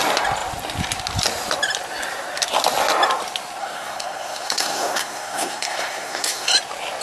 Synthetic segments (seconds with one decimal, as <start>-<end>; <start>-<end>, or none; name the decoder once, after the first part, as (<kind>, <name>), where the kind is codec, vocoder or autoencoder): 3.6-6.5 (codec, SNAC)